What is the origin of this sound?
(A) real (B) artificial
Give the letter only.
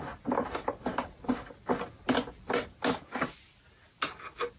A